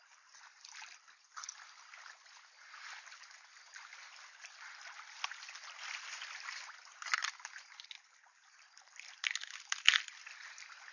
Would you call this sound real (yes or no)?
yes